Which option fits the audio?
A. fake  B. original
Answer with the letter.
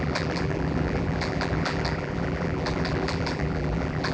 A